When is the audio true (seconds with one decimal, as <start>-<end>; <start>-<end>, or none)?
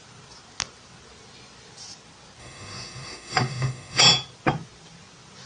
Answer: 0.0-2.4; 4.0-5.5